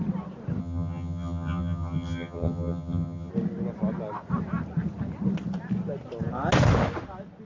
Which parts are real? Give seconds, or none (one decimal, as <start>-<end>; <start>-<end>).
0.0-0.6; 3.3-7.4